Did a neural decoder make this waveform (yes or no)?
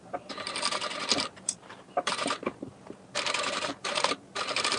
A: yes